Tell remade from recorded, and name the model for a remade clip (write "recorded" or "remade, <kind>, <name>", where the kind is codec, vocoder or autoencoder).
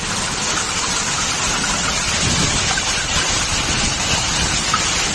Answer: remade, vocoder, BigVGAN v2